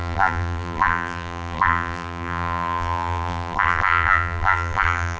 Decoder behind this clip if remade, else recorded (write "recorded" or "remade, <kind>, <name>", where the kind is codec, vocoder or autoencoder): remade, vocoder, BigVGAN v2